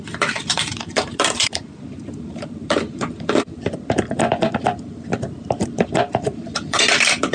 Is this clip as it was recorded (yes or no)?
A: no